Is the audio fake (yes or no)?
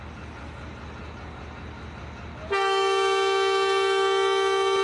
no